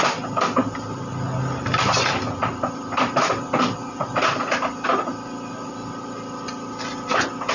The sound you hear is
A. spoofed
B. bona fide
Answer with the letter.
B